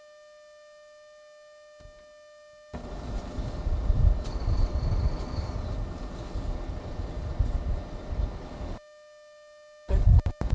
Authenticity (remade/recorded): recorded